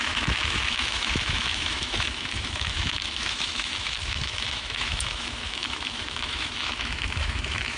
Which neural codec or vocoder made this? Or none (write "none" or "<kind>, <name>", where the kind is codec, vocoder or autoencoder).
autoencoder, DAC-VAE